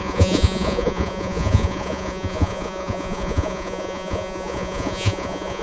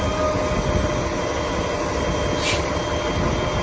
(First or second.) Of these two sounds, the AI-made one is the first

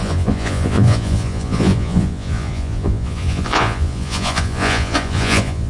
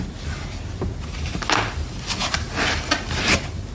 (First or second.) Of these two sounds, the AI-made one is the first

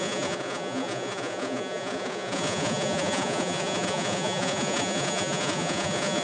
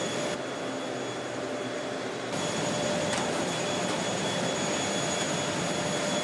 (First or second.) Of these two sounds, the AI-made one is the first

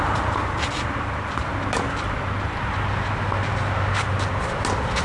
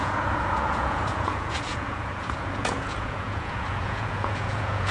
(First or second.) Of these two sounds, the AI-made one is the second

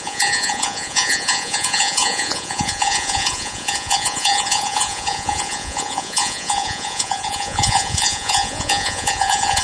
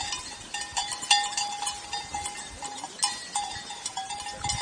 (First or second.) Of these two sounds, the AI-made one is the first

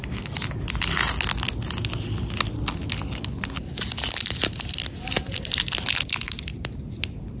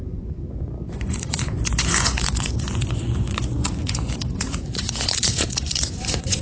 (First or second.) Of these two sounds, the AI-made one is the second